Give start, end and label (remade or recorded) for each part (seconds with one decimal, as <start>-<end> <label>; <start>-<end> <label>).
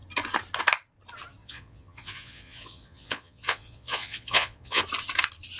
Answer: 0.0-1.4 recorded; 1.4-4.8 remade; 4.8-5.6 recorded